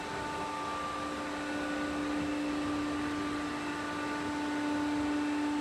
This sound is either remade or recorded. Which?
recorded